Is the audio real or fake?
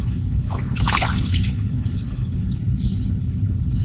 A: fake